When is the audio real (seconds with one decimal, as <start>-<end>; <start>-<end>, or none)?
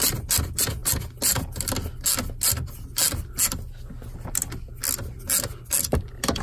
0.0-6.4